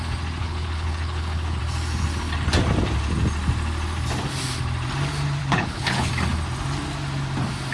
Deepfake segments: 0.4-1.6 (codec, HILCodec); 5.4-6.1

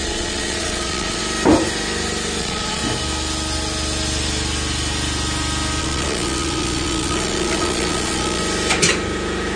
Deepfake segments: 0.0-1.2 (vocoder, Vocos); 2.4-2.8; 5.8-8.4